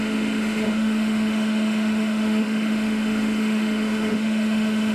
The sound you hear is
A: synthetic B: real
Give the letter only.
A